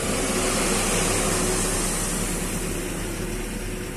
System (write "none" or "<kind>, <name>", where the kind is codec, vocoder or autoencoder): none